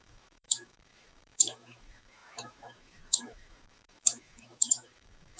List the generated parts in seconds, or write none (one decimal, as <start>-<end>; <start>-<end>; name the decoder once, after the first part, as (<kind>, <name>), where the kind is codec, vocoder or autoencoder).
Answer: 0.0-5.4 (autoencoder, DAC-VAE)

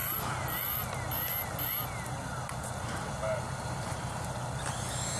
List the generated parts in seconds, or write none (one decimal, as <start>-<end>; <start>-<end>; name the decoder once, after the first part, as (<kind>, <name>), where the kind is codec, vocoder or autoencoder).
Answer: none

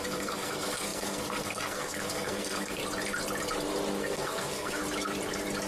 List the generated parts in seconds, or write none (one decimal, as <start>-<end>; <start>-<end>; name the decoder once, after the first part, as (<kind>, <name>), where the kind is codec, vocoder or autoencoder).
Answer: 0.0-2.8 (codec, SNAC); 4.0-4.8

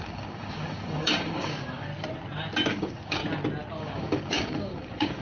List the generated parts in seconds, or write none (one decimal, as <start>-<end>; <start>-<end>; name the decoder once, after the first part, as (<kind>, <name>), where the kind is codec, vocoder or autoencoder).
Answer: 0.0-1.9 (codec, DAC); 2.7-3.2; 3.8-5.2